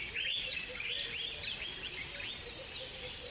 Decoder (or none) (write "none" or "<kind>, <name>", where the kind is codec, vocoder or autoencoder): none